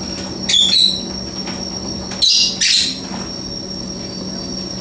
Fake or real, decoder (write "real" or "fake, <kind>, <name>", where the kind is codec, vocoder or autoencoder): real